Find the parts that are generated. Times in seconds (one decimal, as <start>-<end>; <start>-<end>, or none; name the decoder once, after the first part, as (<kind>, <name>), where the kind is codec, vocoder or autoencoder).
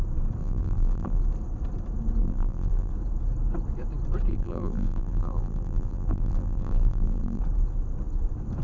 0.4-1.2 (vocoder, BigVGAN v2); 2.2-2.9; 4.3-7.4